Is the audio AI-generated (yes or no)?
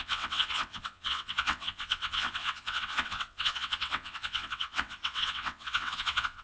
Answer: yes